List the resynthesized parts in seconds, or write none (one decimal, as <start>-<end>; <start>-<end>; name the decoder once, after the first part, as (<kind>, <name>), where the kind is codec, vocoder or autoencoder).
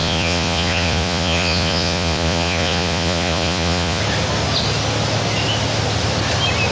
0.0-4.0 (vocoder, Vocos)